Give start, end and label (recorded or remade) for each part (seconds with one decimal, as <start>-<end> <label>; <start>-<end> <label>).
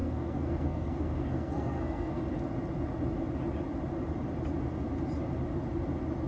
0.0-2.2 remade; 2.2-6.3 recorded